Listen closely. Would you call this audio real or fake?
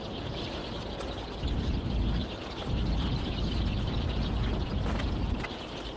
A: real